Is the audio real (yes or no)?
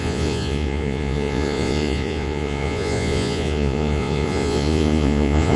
no